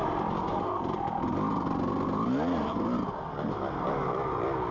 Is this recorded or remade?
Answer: recorded